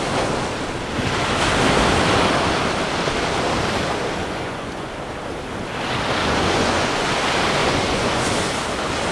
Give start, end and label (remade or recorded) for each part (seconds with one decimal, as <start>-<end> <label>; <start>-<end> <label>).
0.0-4.2 recorded; 4.2-4.9 remade; 4.9-6.2 recorded; 6.2-7.1 remade; 7.1-7.6 recorded; 7.6-8.3 remade; 8.3-9.1 recorded